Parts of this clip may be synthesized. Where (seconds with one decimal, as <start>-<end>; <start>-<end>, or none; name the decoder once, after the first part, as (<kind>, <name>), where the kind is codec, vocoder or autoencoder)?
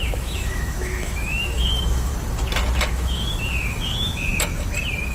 0.0-2.1 (autoencoder, DAC-VAE); 2.9-4.3